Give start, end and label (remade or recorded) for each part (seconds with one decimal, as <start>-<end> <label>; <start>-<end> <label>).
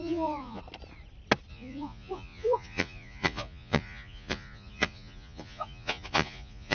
0.0-0.6 remade; 0.6-1.5 recorded; 1.5-6.7 remade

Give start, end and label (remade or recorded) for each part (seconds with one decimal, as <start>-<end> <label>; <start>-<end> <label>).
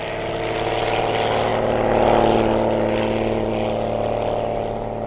0.0-5.1 recorded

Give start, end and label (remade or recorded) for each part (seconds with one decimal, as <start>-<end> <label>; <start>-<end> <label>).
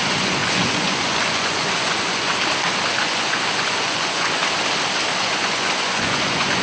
0.0-2.3 remade; 2.3-3.0 recorded; 3.0-4.4 remade; 4.4-5.2 recorded; 5.2-6.6 remade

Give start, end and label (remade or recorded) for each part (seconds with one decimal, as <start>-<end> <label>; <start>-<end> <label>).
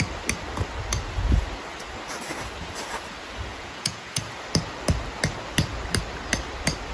0.0-3.5 recorded; 3.5-4.2 remade; 4.2-6.9 recorded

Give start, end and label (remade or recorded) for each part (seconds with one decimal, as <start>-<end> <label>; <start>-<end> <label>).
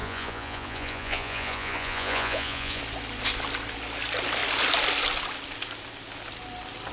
0.0-2.8 remade; 2.8-6.9 recorded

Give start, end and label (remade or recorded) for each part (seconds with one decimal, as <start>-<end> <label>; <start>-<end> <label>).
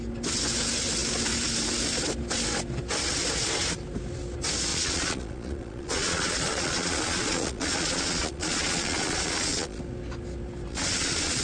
0.0-4.7 recorded; 4.7-9.8 remade; 9.8-10.7 recorded; 10.7-11.4 remade